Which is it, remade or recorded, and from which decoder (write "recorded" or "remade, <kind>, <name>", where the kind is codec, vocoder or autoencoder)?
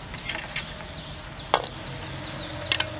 recorded